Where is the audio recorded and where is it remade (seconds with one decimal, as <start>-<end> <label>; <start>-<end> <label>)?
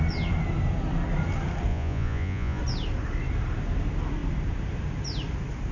0.0-1.7 recorded; 1.7-2.6 remade; 2.6-5.7 recorded